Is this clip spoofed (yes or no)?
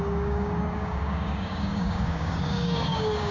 yes